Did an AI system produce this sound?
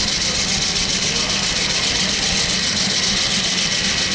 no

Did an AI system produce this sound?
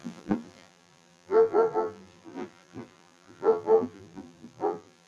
yes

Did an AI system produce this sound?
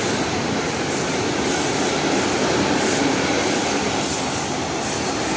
no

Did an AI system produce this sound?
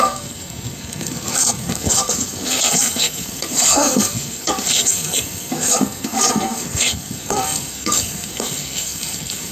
yes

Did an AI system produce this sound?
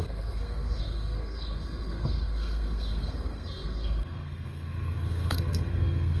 yes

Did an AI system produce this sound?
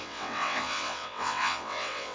yes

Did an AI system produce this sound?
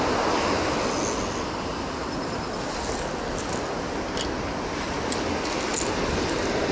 no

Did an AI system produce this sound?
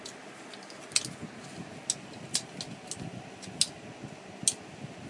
no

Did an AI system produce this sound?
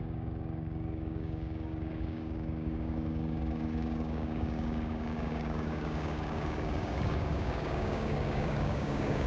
yes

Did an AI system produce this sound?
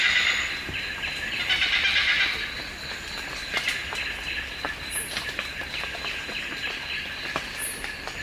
no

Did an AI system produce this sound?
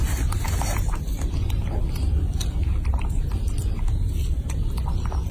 yes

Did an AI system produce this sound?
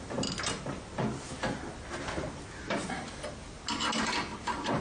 no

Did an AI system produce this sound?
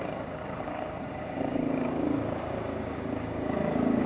yes